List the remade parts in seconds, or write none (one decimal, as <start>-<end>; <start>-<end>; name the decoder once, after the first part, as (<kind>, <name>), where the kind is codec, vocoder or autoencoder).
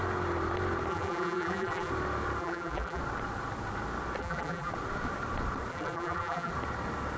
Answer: 0.9-1.9 (vocoder, BigVGAN v2); 2.4-3.0; 4.2-4.7; 5.7-6.5